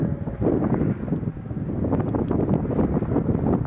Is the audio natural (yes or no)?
yes